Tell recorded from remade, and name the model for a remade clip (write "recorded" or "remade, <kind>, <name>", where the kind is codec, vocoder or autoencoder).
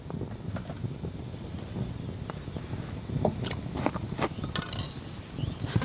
recorded